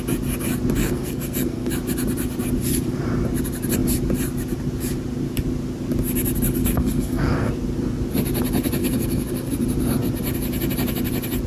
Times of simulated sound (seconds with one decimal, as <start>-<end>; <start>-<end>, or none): 0.8-1.7; 6.6-7.5; 8.8-9.5